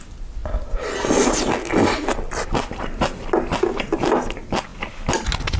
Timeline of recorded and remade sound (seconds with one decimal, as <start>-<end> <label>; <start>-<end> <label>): 0.0-5.6 recorded